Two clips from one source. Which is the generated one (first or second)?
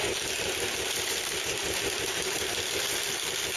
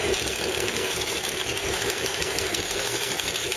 second